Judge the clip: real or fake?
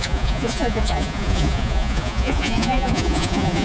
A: fake